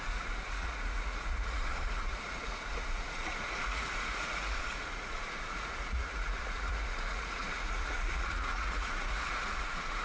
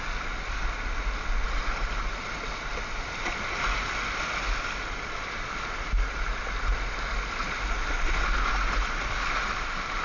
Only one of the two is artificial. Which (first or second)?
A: first